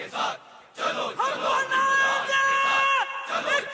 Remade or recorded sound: recorded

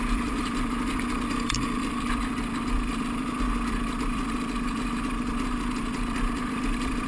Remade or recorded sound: remade